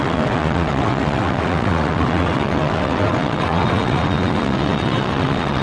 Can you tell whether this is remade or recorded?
remade